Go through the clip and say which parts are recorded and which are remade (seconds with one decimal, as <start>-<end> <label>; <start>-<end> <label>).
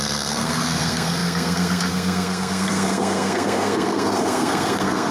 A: 0.0-5.1 remade